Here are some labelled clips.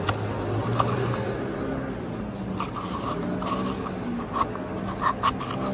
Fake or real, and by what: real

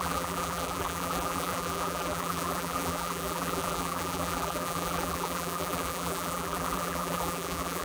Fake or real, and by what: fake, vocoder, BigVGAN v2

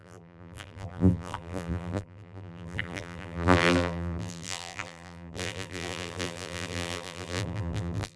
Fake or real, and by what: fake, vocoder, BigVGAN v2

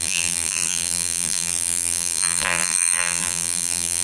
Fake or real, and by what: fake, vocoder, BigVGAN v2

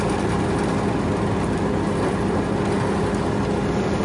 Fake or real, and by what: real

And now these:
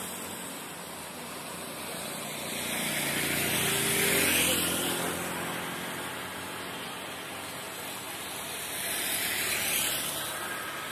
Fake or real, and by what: real